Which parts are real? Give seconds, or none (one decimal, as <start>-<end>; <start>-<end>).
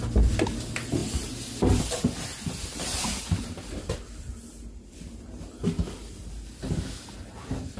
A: 0.0-7.8